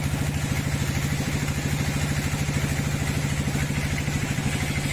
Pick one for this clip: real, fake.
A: real